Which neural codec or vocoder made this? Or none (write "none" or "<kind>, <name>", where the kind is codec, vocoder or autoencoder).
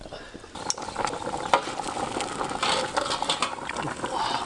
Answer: none